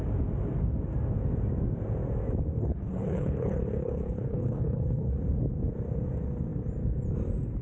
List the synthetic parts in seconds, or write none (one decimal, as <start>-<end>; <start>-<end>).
2.6-5.1